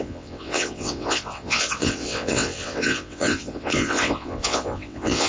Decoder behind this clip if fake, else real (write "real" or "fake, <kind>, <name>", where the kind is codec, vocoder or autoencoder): fake, vocoder, WaveNeXt